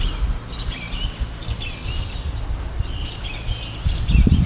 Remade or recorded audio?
recorded